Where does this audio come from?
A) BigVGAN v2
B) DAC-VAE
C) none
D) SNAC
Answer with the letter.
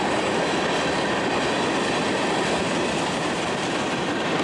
A